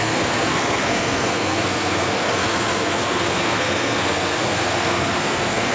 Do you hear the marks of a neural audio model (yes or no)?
yes